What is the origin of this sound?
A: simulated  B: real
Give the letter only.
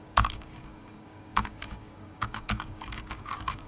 A